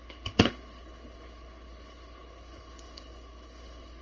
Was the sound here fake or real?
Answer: fake